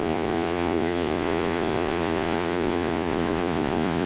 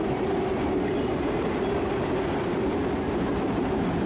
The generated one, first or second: first